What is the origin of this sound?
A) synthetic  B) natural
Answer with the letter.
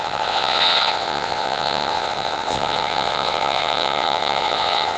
A